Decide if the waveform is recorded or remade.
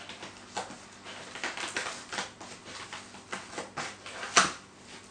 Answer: recorded